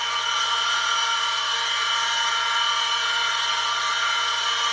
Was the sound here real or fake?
real